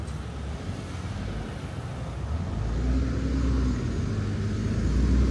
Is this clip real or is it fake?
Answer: real